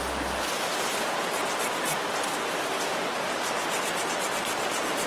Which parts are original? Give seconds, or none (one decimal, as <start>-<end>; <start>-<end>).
0.0-5.1

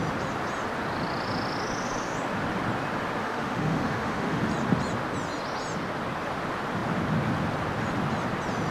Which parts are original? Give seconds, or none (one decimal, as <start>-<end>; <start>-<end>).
0.0-3.2; 4.4-8.7

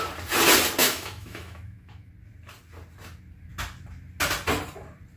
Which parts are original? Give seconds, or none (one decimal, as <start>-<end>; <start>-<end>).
0.0-0.8; 2.1-5.2

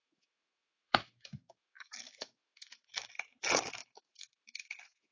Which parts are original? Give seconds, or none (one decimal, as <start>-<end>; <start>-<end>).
3.1-3.8

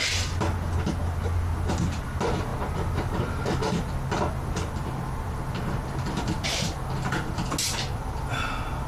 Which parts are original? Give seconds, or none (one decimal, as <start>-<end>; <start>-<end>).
0.0-8.9

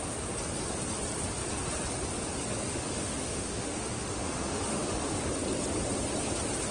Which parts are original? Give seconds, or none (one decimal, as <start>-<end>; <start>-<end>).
0.0-2.7; 5.2-6.7

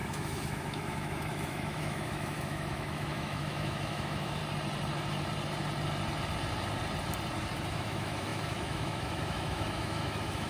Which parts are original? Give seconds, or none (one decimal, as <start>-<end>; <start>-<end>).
4.4-7.7

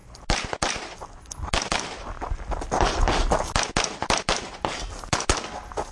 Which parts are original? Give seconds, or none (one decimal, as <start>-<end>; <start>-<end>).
0.0-5.9